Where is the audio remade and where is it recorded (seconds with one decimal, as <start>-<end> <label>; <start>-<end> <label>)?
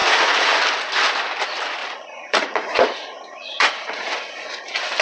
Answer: 0.0-0.6 remade; 0.6-1.8 recorded; 1.8-4.6 remade; 4.6-5.0 recorded